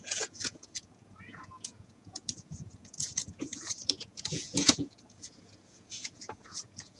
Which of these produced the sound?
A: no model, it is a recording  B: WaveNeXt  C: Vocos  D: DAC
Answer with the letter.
C